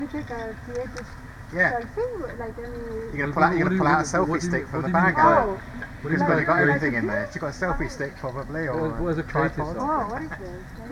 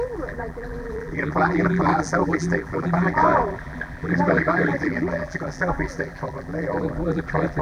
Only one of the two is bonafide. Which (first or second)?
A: first